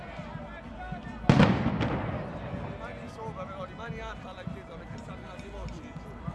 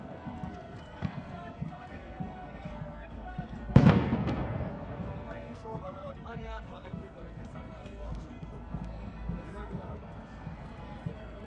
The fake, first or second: second